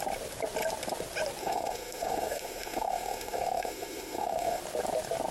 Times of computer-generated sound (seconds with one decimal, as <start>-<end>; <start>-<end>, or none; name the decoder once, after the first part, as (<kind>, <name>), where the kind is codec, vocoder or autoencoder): 1.4-4.6 (autoencoder, DAC-VAE)